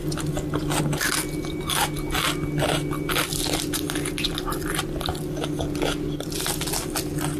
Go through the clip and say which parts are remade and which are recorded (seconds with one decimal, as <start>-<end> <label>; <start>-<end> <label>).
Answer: 0.0-7.4 recorded